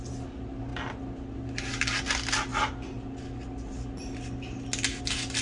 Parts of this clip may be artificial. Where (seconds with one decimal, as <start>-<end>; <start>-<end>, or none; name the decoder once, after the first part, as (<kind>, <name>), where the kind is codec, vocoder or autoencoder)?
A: none